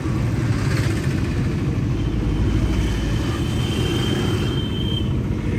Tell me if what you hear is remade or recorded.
recorded